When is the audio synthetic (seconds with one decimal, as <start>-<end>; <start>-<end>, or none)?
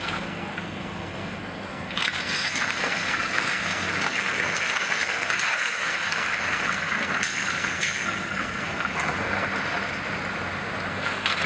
0.0-9.5; 10.9-11.5